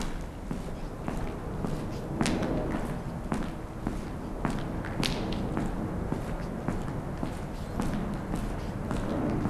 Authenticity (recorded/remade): recorded